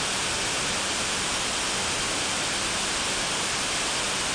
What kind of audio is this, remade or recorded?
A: recorded